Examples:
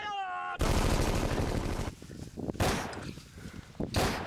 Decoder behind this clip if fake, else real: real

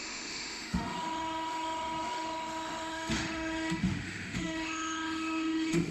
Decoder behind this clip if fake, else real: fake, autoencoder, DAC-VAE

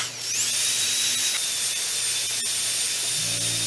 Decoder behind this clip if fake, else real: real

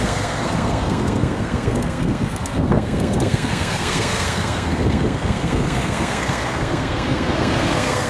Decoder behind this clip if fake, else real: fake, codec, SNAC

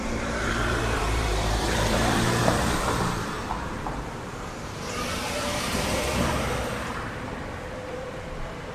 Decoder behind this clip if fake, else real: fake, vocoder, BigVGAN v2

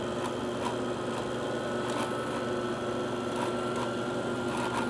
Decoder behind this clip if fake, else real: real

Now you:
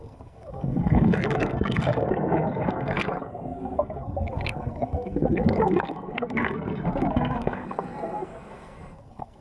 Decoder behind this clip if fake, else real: fake, codec, SNAC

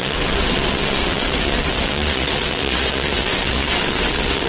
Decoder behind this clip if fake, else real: fake, vocoder, WaveNeXt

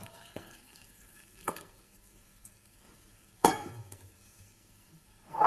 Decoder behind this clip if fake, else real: fake, codec, SNAC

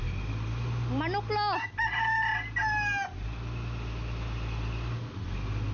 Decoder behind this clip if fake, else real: real